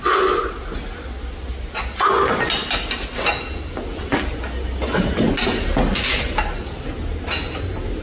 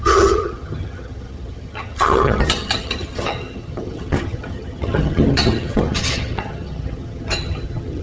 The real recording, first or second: first